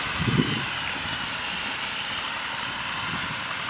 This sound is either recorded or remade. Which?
recorded